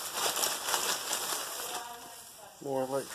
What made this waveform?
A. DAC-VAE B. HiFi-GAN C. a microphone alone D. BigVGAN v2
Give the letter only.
C